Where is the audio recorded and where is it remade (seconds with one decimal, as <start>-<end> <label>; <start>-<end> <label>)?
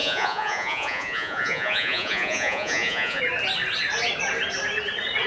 0.0-3.2 remade; 3.2-5.3 recorded